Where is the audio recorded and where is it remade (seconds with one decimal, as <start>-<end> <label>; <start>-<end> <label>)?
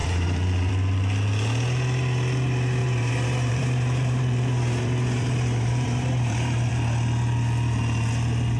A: 0.0-0.7 remade; 0.7-2.8 recorded; 2.8-6.7 remade; 6.7-8.6 recorded